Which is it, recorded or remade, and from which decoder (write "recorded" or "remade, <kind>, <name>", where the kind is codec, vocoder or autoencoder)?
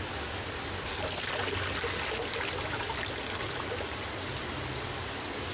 recorded